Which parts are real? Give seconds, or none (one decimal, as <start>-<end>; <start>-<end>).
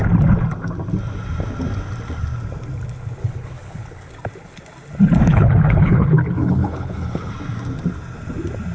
0.0-3.2; 4.1-5.3; 7.3-8.7